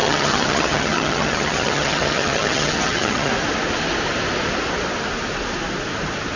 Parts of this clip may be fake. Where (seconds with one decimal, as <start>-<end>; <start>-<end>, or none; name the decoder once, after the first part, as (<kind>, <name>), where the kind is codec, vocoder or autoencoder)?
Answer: 0.0-3.3 (vocoder, HiFi-GAN)